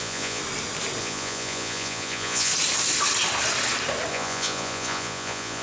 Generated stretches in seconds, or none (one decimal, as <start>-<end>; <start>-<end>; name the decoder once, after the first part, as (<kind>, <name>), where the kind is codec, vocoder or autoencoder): 0.0-0.4 (vocoder, Vocos); 1.0-2.5; 4.1-5.6